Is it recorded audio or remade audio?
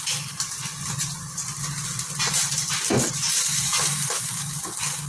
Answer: recorded